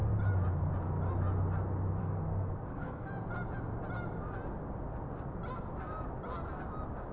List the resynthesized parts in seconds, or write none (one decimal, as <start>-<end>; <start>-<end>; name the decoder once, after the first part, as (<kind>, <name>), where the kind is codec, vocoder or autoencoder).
2.0-3.1 (codec, SNAC)